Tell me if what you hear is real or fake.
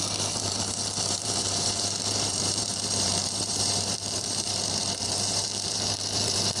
fake